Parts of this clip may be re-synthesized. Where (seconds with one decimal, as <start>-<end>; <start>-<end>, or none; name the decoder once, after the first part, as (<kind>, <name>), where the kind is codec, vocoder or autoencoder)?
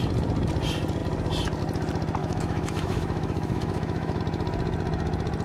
2.2-4.2 (autoencoder, DAC-VAE)